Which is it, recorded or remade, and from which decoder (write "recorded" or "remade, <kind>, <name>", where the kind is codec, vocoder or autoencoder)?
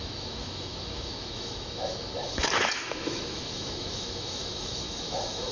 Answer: remade, autoencoder, DAC-VAE